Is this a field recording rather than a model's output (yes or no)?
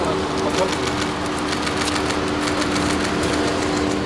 yes